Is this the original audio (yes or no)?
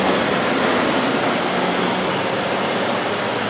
yes